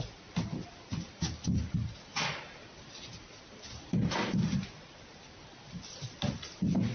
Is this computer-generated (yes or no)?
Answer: no